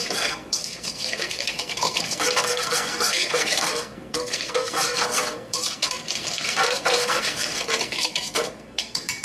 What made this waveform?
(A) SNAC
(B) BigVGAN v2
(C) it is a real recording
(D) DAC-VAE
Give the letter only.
A